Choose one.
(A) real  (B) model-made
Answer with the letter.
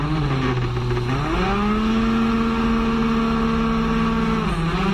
A